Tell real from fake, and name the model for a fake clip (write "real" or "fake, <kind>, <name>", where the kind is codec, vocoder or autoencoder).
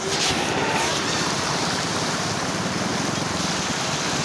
real